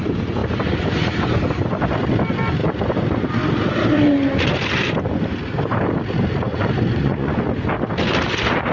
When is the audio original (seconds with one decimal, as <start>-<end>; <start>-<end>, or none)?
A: 0.0-6.5; 7.4-8.7